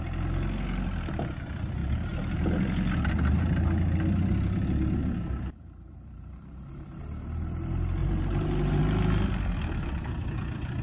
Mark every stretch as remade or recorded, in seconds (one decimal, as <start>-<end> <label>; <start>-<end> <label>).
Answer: 0.0-1.8 recorded; 1.8-2.3 remade; 2.3-5.0 recorded; 5.0-7.0 remade; 7.0-8.0 recorded; 8.0-8.8 remade; 8.8-10.8 recorded

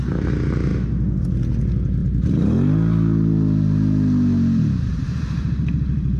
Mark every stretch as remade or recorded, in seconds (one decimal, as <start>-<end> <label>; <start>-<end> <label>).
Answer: 0.0-2.0 recorded; 2.0-2.5 remade; 2.5-4.9 recorded; 4.9-6.2 remade

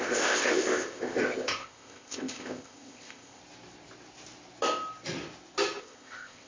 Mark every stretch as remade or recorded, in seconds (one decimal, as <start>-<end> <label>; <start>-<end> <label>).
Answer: 0.0-3.4 remade; 3.4-5.8 recorded; 5.8-6.5 remade

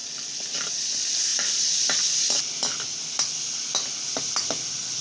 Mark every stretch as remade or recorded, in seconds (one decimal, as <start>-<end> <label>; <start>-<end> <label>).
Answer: 0.0-5.0 recorded

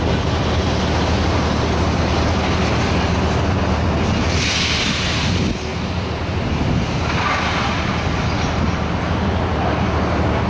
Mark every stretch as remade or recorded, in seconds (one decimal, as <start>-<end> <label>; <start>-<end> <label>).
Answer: 0.0-10.5 recorded